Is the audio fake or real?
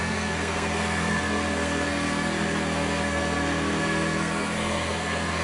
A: fake